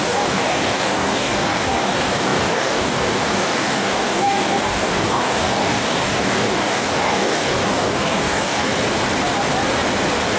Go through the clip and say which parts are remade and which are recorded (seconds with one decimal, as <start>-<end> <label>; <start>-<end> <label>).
0.0-8.7 remade; 8.7-10.4 recorded